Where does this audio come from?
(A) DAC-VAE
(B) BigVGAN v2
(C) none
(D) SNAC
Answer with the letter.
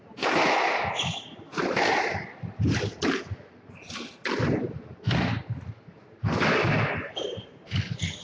C